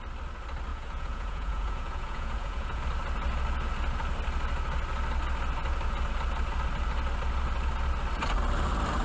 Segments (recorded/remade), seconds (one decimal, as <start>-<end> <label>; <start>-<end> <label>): 0.0-0.7 recorded; 0.7-2.8 remade; 2.8-9.0 recorded